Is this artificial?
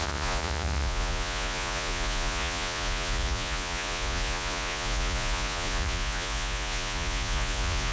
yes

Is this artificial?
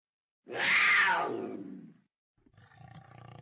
no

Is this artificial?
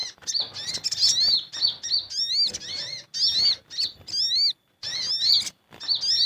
no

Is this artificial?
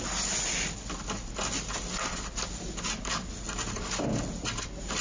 no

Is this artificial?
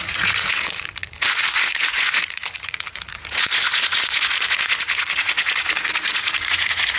yes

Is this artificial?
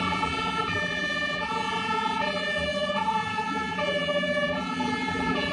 yes